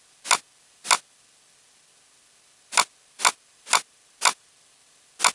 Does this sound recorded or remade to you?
recorded